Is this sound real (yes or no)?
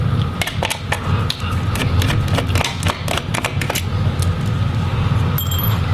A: yes